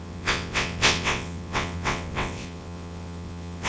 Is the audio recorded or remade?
remade